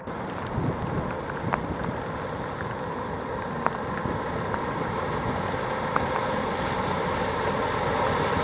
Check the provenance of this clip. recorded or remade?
recorded